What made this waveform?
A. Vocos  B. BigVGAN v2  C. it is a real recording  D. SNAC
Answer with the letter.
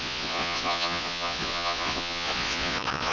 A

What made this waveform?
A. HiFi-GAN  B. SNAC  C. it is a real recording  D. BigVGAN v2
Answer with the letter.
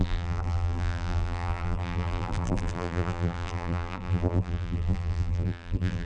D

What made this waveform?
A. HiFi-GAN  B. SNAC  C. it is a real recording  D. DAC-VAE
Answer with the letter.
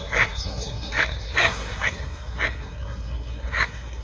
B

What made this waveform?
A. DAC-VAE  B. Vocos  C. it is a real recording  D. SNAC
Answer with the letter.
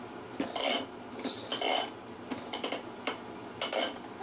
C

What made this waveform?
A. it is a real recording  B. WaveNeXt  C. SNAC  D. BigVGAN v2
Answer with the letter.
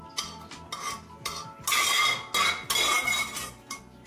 A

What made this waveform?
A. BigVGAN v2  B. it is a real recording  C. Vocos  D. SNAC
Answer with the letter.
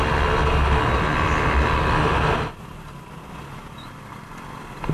B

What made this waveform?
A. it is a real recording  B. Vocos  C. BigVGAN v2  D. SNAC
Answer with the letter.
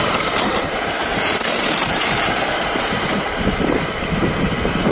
C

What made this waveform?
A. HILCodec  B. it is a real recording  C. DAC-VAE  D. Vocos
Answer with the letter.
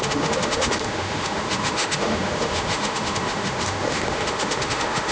C